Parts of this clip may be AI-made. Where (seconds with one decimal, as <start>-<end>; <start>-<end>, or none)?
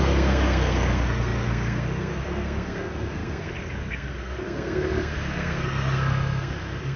0.0-7.0